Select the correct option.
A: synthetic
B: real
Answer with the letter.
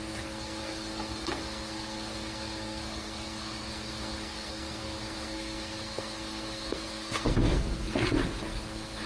A